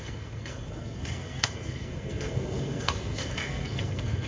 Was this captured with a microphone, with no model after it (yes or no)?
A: no